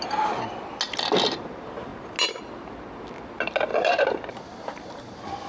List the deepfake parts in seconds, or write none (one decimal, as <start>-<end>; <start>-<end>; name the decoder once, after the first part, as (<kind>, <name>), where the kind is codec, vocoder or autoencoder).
none